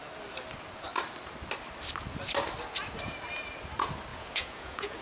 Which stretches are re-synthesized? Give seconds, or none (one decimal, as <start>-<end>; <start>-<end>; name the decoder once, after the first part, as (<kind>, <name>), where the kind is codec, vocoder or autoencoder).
4.1-5.0 (vocoder, Vocos)